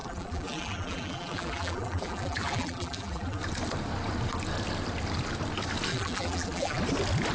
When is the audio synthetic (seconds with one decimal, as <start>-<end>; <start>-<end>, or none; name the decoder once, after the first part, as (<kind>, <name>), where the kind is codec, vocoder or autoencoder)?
0.0-3.4 (vocoder, BigVGAN v2); 5.9-6.8